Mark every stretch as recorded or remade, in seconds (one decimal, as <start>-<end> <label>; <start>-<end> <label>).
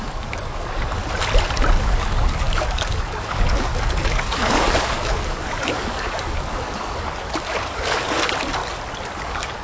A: 0.0-1.0 remade; 1.0-1.8 recorded; 1.8-8.6 remade; 8.6-9.2 recorded; 9.2-9.6 remade